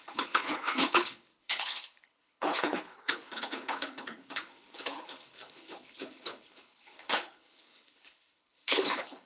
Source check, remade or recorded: remade